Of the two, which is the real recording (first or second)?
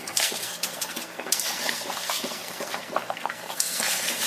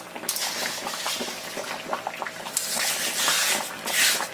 second